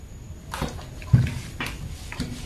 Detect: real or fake real